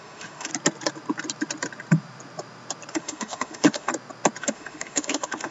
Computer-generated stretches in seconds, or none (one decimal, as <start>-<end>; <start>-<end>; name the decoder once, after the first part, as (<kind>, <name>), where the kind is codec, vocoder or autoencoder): 0.0-0.5 (autoencoder, DAC-VAE); 2.9-3.9; 4.4-5.5

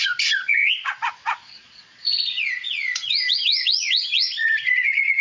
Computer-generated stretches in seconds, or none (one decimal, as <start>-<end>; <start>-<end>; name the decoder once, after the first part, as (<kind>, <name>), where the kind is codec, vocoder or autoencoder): 0.0-5.2 (vocoder, Vocos)

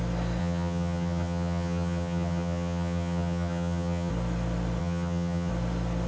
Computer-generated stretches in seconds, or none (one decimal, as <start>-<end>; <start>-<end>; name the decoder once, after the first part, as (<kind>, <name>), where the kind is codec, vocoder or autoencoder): 0.4-4.1 (vocoder, HiFi-GAN); 4.8-5.5

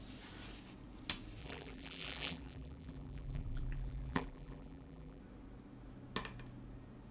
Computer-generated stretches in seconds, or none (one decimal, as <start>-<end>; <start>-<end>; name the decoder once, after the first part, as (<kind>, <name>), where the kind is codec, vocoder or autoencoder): 1.4-5.2 (vocoder, BigVGAN v2)

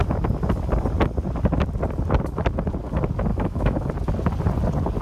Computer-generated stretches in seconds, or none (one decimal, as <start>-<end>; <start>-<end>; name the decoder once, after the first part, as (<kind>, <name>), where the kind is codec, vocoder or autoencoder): 3.3-3.9 (autoencoder, DAC-VAE)